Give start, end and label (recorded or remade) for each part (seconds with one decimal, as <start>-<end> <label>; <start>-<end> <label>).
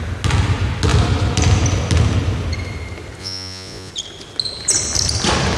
0.0-3.2 recorded; 3.2-3.9 remade; 3.9-5.6 recorded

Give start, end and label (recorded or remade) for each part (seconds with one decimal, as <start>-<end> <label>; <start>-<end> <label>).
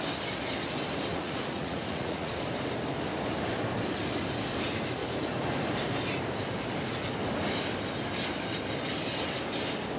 0.0-1.1 recorded; 1.1-2.4 remade; 2.4-10.0 recorded